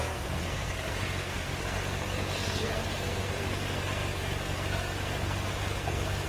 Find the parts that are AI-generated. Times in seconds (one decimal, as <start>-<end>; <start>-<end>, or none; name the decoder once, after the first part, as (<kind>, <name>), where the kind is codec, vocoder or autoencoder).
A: 0.0-6.3 (codec, SNAC)